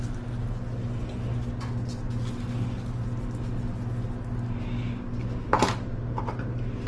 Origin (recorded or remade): recorded